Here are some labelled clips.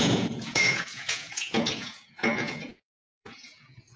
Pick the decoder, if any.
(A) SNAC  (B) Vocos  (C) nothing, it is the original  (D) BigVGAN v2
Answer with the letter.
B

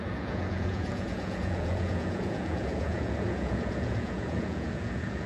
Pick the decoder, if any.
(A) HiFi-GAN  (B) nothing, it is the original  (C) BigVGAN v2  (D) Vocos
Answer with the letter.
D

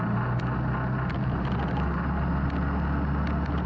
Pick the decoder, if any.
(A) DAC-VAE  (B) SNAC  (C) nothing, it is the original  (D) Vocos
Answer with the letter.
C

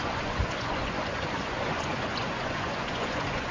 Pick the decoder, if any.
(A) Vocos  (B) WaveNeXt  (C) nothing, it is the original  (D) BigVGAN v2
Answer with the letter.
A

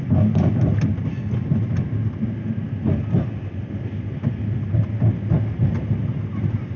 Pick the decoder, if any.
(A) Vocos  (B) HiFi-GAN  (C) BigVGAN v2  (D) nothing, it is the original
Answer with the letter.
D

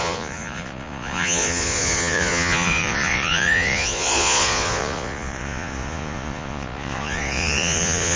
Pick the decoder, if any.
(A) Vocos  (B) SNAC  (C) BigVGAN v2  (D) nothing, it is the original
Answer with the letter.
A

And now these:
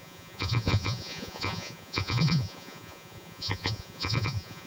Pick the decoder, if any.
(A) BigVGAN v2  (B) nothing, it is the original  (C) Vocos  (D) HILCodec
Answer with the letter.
C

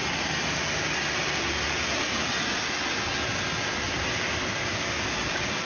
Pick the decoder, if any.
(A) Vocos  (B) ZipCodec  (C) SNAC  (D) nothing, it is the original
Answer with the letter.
D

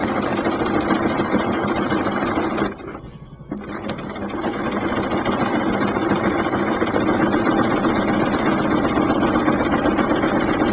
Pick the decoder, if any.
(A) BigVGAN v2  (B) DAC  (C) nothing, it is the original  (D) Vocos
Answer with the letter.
C